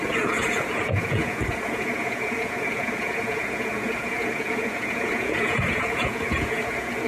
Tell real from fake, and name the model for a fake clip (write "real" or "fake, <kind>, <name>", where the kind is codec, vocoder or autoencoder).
fake, vocoder, Vocos